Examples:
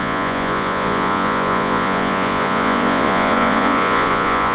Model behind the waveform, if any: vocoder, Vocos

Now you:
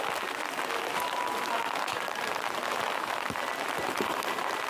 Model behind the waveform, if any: none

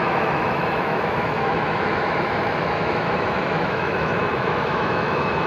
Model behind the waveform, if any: autoencoder, DAC-VAE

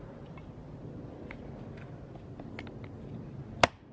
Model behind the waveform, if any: none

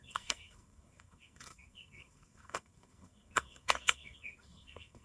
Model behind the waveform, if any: codec, SNAC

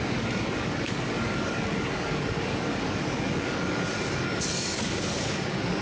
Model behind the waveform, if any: codec, DAC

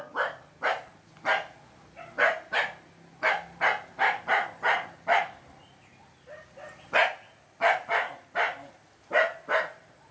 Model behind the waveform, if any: none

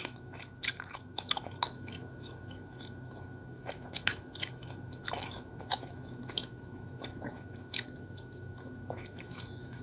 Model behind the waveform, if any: autoencoder, DAC-VAE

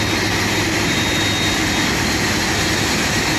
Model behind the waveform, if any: none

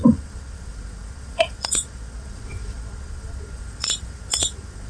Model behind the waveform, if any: vocoder, Vocos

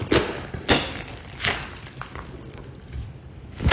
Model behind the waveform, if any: none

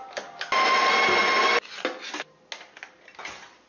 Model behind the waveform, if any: none